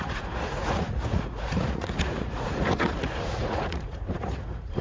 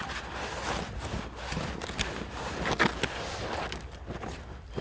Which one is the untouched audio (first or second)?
second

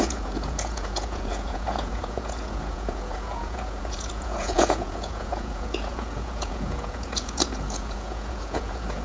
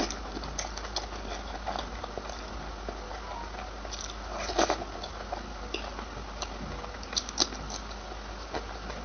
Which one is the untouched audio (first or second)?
second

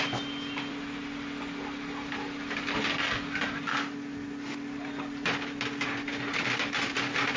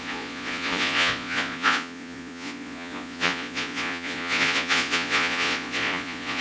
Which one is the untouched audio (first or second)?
first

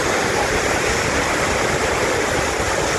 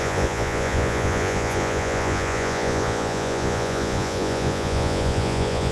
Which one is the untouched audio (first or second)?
first